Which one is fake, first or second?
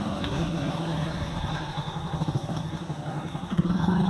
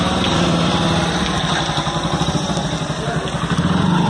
first